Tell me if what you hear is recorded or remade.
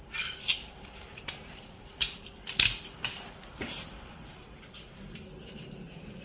remade